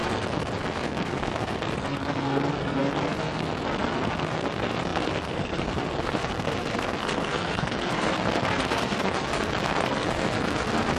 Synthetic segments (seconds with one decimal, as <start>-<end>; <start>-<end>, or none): 0.0-11.0